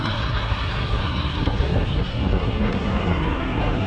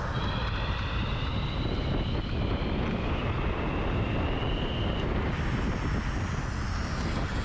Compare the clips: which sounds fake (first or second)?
first